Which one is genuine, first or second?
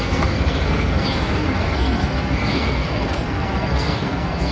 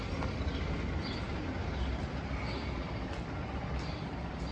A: second